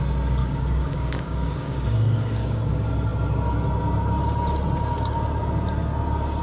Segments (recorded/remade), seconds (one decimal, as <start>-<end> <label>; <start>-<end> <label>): 0.0-0.4 recorded; 0.4-2.7 remade; 2.7-6.4 recorded